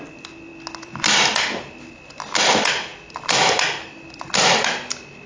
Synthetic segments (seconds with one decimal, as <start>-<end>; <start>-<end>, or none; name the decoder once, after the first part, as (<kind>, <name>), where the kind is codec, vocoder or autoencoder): none